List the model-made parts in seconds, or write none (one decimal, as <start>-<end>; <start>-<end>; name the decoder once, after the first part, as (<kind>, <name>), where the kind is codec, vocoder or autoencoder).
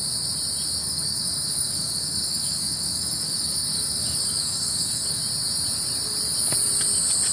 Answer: 0.8-5.2 (codec, DAC)